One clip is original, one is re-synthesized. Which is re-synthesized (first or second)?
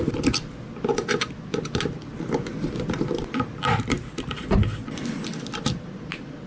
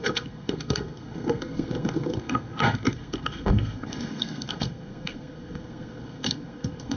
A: second